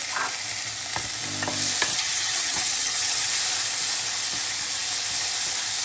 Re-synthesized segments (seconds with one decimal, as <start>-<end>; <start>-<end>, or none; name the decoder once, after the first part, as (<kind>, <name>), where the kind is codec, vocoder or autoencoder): 1.9-3.3 (vocoder, HiFi-GAN)